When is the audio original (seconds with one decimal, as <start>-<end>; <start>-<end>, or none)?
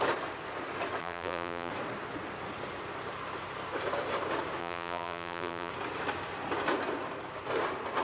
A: 0.0-1.0; 1.7-4.6; 5.7-8.0